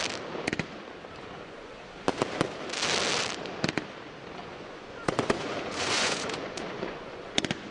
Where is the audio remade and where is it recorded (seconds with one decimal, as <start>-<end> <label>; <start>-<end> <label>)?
0.0-1.2 recorded; 1.2-1.7 remade; 1.7-4.4 recorded; 4.4-7.7 remade